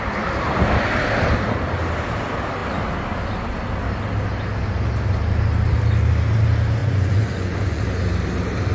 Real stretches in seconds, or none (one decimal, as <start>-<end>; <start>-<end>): 0.0-6.8; 7.8-8.7